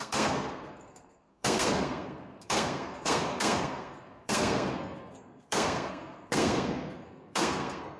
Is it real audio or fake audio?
fake